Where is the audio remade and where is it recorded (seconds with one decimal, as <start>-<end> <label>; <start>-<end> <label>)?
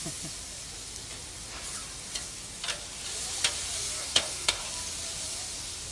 0.0-4.0 recorded; 4.0-4.6 remade; 4.6-5.9 recorded